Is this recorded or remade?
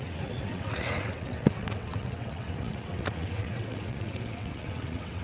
remade